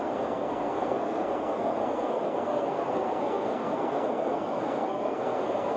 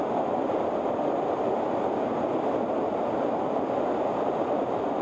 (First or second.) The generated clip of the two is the first